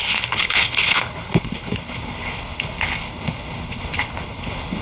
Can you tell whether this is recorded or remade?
remade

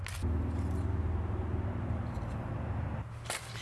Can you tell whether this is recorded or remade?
recorded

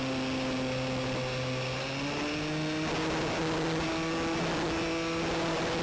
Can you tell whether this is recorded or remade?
recorded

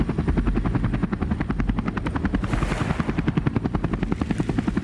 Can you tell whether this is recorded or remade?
recorded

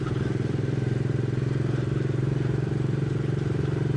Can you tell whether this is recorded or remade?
remade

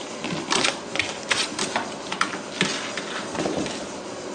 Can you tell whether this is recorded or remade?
recorded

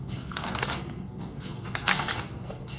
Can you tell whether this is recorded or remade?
remade